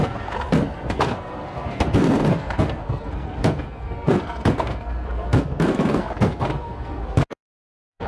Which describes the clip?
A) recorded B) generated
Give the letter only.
B